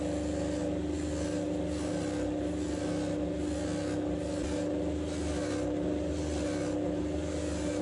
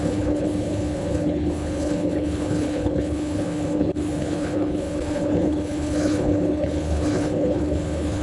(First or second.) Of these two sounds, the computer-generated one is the second